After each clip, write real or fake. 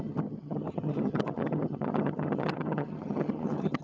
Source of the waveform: fake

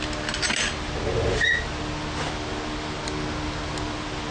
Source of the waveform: real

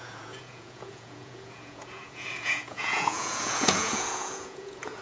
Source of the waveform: fake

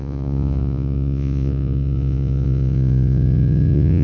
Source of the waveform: fake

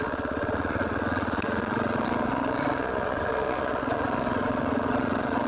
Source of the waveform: fake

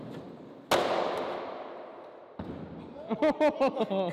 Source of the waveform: real